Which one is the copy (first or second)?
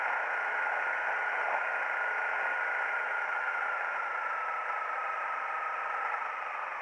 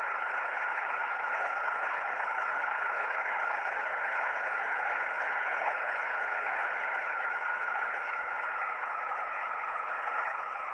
second